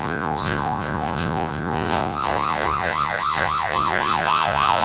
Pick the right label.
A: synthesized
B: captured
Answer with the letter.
A